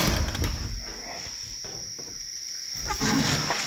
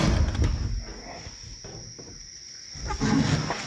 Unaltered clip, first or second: second